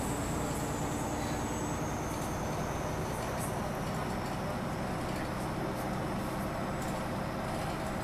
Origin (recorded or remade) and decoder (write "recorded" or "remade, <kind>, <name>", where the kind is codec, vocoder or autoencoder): recorded